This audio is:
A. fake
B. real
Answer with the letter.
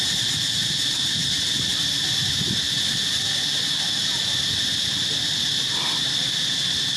B